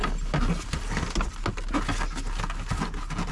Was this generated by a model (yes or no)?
no